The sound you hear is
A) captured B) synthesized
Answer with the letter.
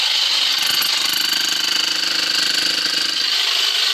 A